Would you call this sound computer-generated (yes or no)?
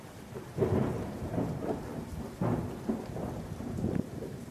yes